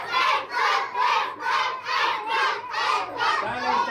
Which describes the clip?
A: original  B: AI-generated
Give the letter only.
B